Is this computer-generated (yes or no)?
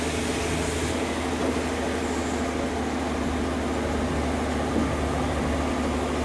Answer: no